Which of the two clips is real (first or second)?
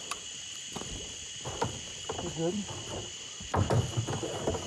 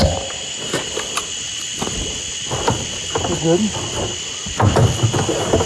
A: second